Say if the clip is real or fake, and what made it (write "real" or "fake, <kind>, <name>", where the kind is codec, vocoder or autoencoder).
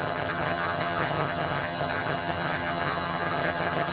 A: fake, vocoder, HiFi-GAN